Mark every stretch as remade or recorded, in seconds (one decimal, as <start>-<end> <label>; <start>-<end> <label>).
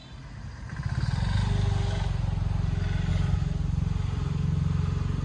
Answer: 0.0-5.2 recorded